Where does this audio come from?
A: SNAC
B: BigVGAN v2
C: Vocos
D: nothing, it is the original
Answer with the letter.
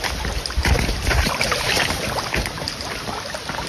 D